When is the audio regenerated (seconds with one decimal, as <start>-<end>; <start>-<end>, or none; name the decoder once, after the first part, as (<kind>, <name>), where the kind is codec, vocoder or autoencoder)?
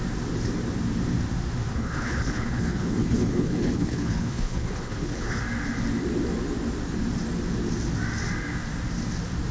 1.7-5.4 (codec, HILCodec)